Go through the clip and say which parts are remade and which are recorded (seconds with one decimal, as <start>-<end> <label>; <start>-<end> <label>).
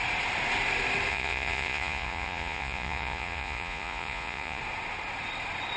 0.0-1.1 recorded; 1.1-4.6 remade; 4.6-5.8 recorded